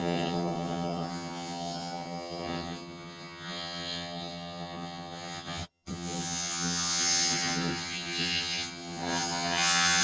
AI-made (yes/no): yes